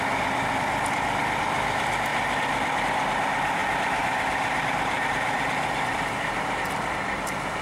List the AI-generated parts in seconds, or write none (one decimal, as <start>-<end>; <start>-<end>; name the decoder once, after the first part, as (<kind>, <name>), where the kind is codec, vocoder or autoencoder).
0.0-2.1 (vocoder, BigVGAN v2); 2.8-7.6